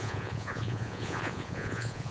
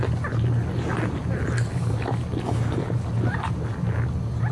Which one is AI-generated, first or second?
first